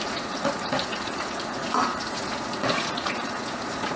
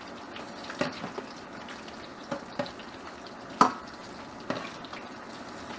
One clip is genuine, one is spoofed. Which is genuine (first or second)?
second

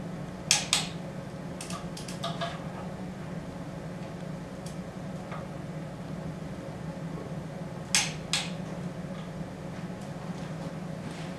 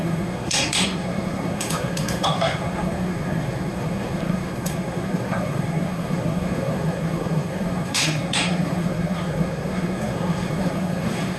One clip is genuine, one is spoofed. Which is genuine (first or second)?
first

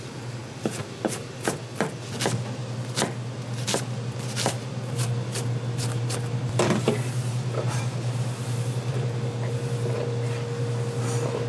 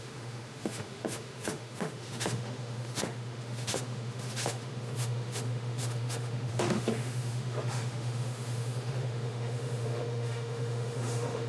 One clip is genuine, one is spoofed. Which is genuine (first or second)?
first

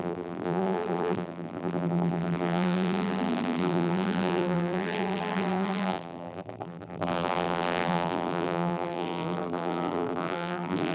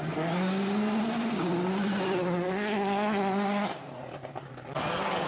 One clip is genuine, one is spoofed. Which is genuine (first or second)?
second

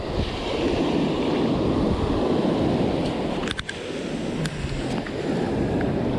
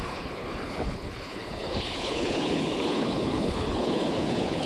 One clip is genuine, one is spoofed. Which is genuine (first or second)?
first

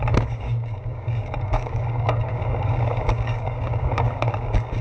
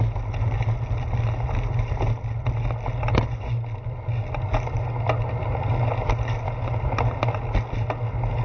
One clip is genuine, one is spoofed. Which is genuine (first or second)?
second